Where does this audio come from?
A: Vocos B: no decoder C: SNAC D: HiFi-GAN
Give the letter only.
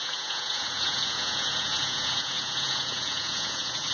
A